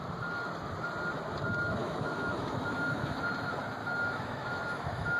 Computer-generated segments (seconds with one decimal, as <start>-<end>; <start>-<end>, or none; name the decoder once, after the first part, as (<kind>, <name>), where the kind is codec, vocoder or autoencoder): 1.8-3.2 (autoencoder, DAC-VAE); 3.8-5.2